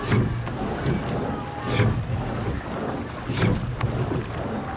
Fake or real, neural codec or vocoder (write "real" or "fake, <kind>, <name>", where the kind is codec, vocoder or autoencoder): real